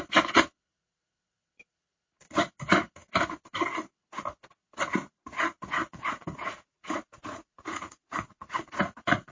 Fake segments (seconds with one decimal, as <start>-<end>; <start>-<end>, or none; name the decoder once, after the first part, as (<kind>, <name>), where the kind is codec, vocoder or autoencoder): 5.8-9.3 (vocoder, Vocos)